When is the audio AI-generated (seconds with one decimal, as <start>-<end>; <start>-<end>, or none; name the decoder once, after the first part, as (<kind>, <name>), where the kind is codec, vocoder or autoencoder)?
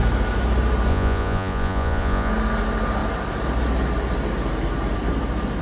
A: 0.9-2.3 (vocoder, Vocos)